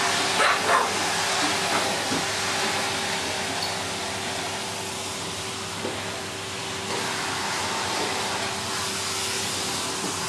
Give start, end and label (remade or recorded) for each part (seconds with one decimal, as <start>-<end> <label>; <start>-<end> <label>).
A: 0.0-10.3 recorded